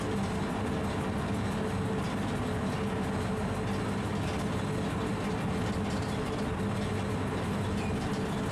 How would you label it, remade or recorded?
recorded